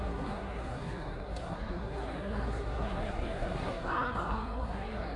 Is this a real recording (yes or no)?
no